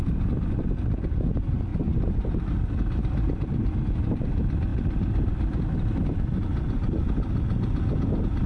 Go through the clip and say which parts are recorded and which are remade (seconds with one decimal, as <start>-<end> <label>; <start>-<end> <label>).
0.0-4.7 recorded; 4.7-7.0 remade; 7.0-8.5 recorded